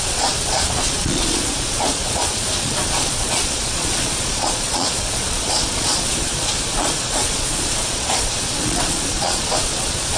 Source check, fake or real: fake